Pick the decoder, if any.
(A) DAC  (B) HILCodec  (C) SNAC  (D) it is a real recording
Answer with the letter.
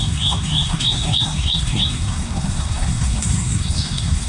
C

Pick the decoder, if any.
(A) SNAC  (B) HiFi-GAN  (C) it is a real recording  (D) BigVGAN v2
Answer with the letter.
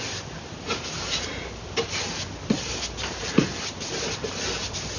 C